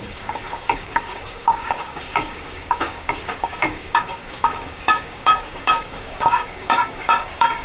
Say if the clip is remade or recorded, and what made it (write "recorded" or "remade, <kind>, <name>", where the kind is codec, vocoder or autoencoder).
remade, codec, DAC